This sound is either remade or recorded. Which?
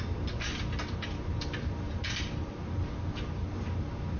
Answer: recorded